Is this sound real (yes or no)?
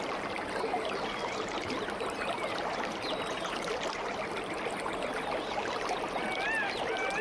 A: yes